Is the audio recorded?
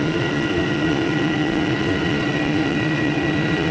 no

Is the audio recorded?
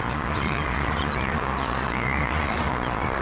no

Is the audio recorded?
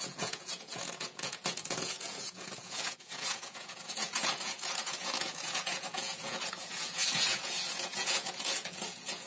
no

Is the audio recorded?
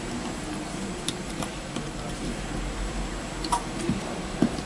yes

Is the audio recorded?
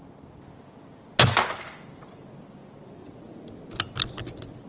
yes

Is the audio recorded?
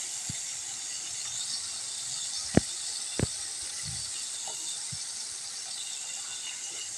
yes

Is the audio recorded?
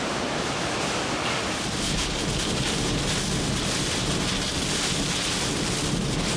yes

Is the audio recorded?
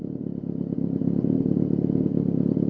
no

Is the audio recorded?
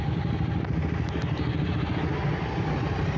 yes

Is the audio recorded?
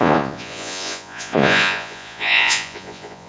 no